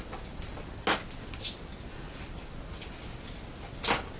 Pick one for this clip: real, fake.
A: real